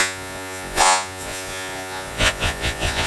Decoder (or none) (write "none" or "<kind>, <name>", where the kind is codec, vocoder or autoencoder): vocoder, Vocos